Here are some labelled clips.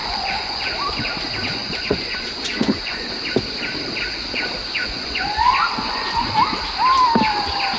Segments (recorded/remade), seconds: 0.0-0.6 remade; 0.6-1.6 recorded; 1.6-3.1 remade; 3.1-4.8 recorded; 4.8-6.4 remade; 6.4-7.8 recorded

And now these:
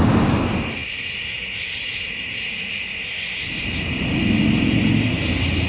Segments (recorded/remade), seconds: 0.0-5.7 recorded

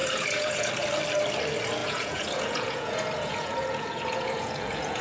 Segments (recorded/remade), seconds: 0.0-0.7 remade; 0.7-1.8 recorded; 1.8-5.0 remade

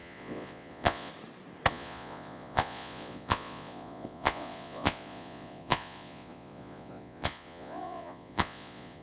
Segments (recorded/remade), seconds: 0.0-1.1 remade; 1.1-1.7 recorded; 1.7-9.0 remade

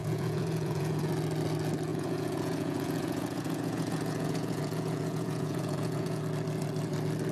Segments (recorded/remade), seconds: 0.0-1.1 remade; 1.1-1.9 recorded; 1.9-6.2 remade; 6.2-7.3 recorded